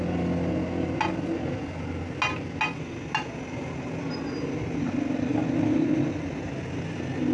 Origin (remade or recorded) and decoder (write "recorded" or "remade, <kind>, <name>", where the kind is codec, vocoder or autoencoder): recorded